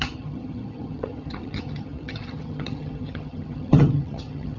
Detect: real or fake fake